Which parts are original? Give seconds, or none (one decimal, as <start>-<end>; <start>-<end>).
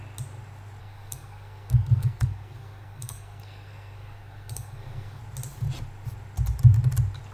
0.0-0.8; 5.2-7.3